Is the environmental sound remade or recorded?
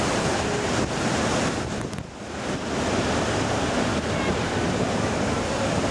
recorded